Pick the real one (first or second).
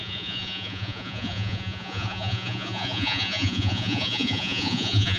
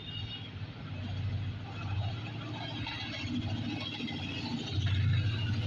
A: second